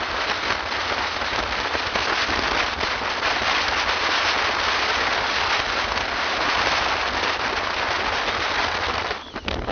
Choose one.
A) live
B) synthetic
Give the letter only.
A